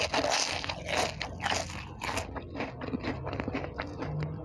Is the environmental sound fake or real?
real